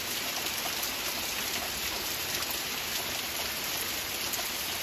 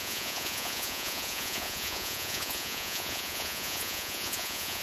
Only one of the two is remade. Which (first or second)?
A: second